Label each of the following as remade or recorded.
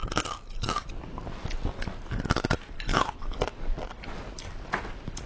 recorded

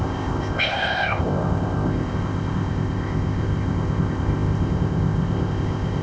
remade